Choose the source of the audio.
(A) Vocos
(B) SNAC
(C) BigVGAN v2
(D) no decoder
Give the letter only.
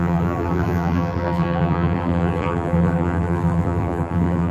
C